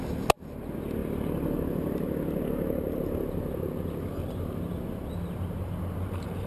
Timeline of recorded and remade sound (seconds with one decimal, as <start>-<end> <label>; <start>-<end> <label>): 0.0-6.5 recorded